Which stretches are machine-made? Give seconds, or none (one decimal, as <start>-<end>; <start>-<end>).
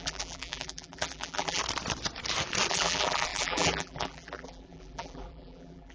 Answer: 0.0-1.6; 2.7-5.9